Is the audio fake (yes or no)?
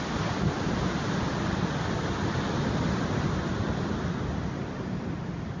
no